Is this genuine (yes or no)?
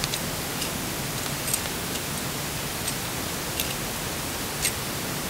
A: yes